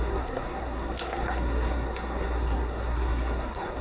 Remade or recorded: remade